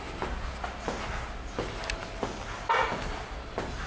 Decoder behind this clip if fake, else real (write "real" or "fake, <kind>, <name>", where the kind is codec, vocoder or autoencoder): real